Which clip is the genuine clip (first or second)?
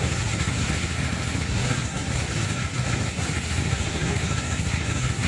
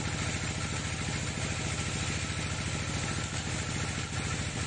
second